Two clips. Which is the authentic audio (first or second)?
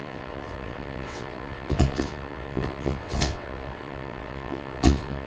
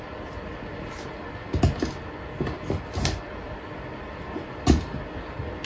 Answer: second